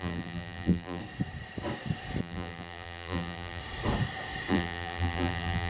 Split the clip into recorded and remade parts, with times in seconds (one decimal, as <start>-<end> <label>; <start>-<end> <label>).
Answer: 0.0-1.0 remade; 1.0-2.2 recorded; 2.2-3.6 remade; 3.6-4.5 recorded; 4.5-5.7 remade